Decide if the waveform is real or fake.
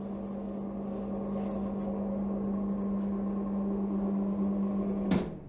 real